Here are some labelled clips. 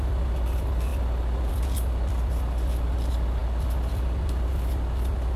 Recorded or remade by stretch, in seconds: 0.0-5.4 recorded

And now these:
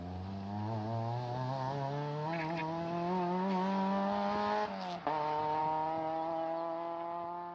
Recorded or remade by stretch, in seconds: 0.0-7.5 recorded

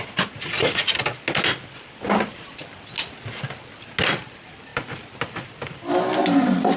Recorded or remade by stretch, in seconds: 0.0-6.8 recorded

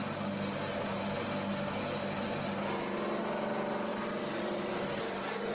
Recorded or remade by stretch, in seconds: 0.0-3.9 recorded; 3.9-5.5 remade